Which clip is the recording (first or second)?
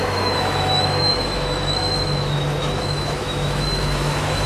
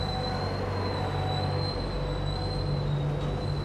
second